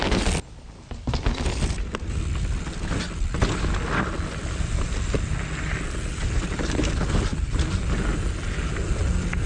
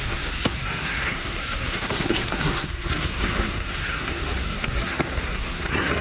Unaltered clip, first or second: first